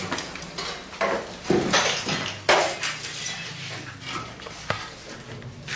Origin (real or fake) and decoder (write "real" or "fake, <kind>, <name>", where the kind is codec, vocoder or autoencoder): real